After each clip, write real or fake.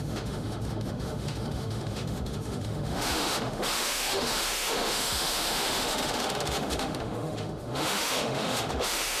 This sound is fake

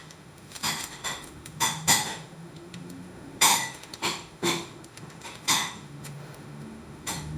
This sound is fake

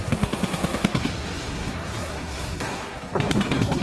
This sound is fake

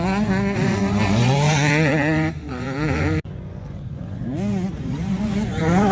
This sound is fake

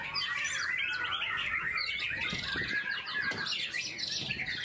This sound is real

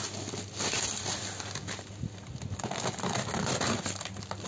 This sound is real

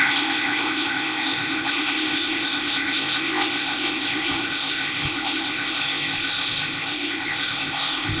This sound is fake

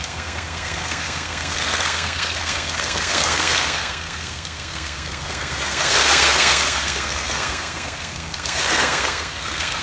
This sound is fake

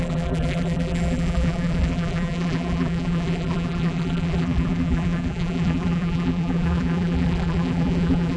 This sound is fake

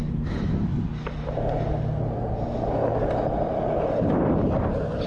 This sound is real